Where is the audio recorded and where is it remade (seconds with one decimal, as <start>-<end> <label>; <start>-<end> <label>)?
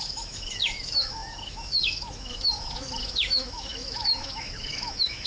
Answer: 0.0-5.3 remade